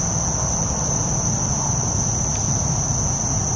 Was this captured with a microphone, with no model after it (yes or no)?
yes